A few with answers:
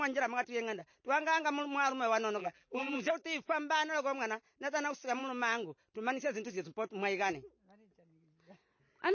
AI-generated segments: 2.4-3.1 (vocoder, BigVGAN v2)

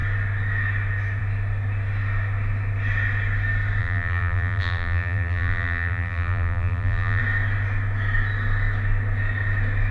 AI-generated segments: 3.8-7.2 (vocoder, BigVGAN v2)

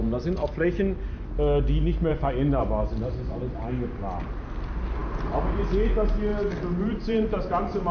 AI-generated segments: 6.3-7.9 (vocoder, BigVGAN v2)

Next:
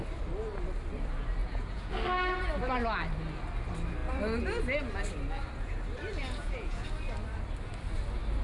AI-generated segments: 1.4-1.9 (vocoder, Vocos); 6.2-6.9

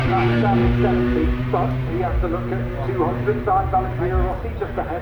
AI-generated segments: none

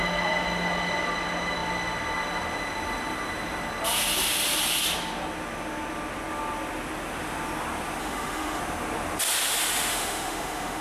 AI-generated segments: 8.0-8.6 (autoencoder, DAC-VAE); 9.9-10.8